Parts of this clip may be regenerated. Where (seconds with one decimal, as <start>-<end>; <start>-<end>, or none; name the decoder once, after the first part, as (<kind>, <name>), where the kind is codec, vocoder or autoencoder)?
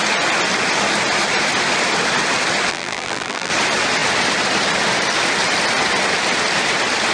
2.7-3.5 (vocoder, BigVGAN v2)